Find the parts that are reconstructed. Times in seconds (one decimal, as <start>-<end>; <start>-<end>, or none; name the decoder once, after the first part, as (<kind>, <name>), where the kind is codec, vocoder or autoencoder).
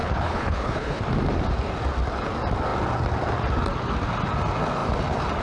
0.0-1.0 (codec, HILCodec)